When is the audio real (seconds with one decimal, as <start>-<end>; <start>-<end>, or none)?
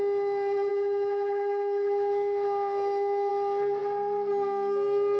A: 0.0-0.7; 3.3-5.2